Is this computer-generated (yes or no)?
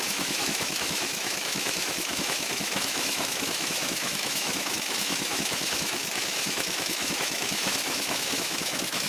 yes